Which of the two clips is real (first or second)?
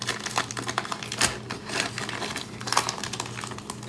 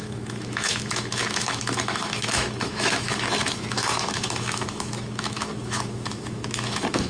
first